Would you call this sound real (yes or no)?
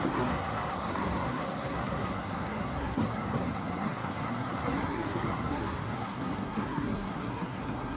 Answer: no